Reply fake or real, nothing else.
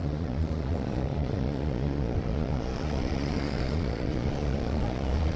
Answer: fake